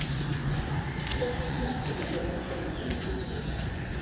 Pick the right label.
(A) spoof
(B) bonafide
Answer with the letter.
A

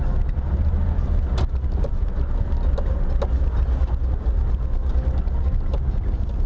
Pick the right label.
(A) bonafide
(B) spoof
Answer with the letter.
A